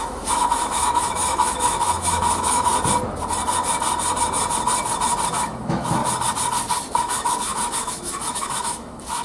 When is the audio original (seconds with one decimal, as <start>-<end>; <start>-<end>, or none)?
2.7-5.3; 6.0-7.0